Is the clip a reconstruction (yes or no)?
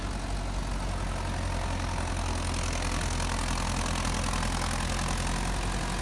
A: no